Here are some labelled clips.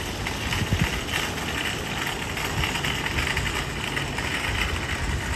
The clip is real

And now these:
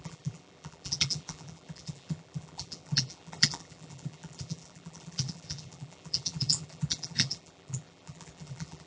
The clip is fake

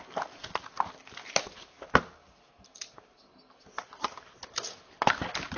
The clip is real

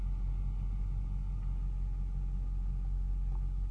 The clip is real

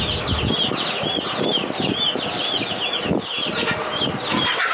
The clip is real